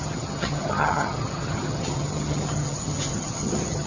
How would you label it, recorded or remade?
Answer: remade